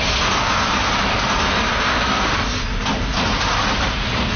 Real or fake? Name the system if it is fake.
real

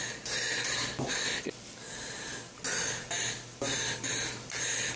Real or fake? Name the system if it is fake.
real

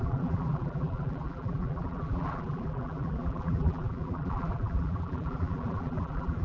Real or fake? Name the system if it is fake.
fake, vocoder, BigVGAN v2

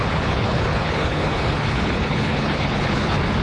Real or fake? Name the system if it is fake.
fake, codec, HILCodec